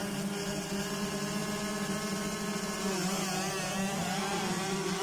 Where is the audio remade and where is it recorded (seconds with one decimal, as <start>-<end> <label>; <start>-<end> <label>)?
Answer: 0.0-5.0 recorded